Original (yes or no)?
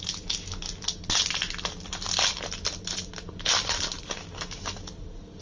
yes